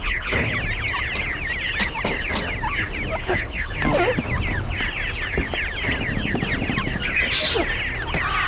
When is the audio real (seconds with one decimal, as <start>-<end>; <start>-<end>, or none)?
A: 0.5-3.2; 3.7-8.5